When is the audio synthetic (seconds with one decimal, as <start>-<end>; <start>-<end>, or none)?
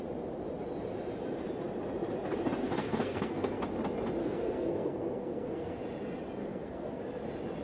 2.6-3.6; 4.2-5.8; 6.4-7.0